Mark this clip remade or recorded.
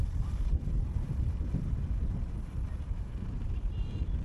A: remade